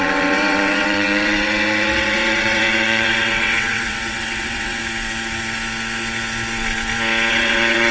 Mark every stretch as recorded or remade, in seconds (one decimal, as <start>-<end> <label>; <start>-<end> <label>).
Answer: 0.0-4.8 remade; 4.8-7.3 recorded; 7.3-7.9 remade